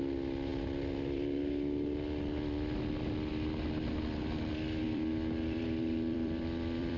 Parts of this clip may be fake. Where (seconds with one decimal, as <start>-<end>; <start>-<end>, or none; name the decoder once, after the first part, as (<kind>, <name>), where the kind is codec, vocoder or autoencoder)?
4.8-7.0 (vocoder, BigVGAN v2)